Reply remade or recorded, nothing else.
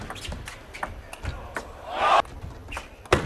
recorded